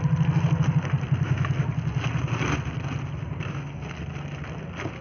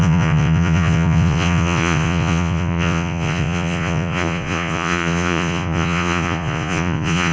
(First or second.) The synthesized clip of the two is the second